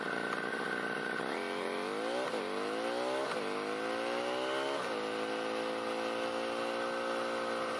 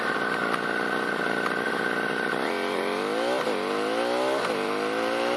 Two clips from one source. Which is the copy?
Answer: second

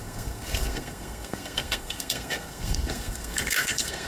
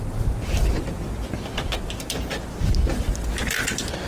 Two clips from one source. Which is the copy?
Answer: first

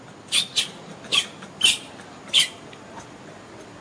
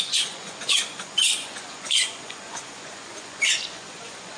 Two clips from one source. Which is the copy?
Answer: second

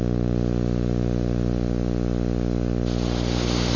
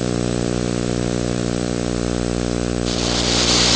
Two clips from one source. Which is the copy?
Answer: second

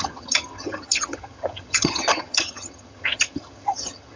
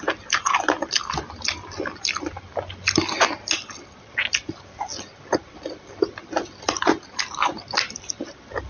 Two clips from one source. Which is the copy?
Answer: first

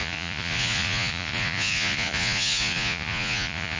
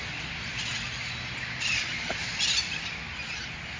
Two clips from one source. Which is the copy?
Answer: first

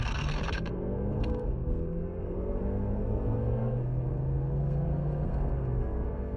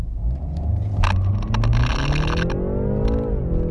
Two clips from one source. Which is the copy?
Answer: first